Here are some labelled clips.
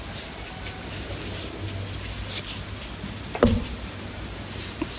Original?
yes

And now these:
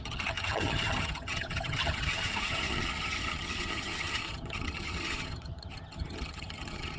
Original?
no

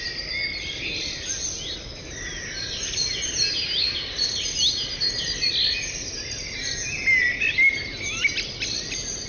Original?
yes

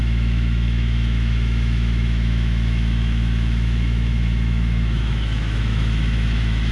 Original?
no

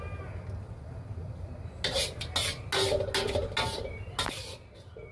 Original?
yes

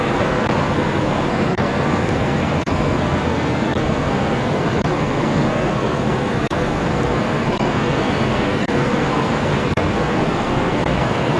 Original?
no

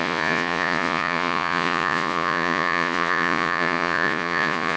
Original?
no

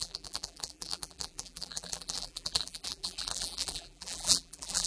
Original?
no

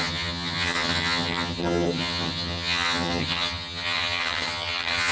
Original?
no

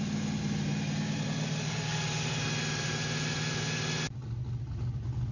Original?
yes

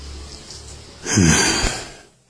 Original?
yes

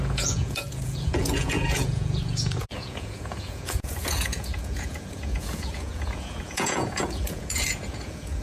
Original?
no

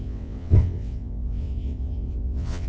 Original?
no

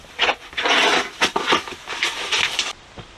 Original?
yes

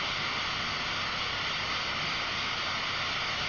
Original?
yes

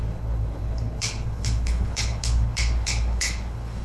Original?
no